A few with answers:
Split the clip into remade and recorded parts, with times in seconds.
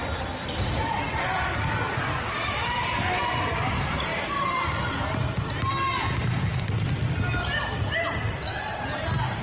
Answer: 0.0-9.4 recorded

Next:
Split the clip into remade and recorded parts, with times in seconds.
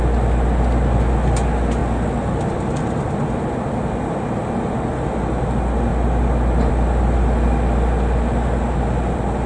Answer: 0.0-9.5 recorded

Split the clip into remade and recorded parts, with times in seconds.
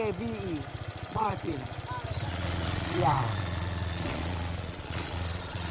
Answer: 0.0-0.9 recorded; 0.9-1.8 remade; 1.8-2.3 recorded; 2.3-5.7 remade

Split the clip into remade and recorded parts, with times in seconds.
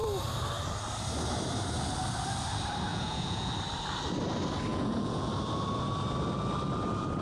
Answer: 0.0-2.9 recorded; 2.9-3.5 remade; 3.5-4.7 recorded; 4.7-5.3 remade; 5.3-7.2 recorded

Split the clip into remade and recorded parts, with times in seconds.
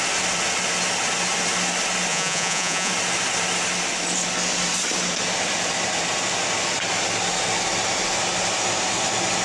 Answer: 0.0-2.1 recorded; 2.1-2.9 remade; 2.9-9.4 recorded